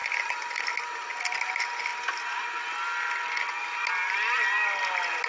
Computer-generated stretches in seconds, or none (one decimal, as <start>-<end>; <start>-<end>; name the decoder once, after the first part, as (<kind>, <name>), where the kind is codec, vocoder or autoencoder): none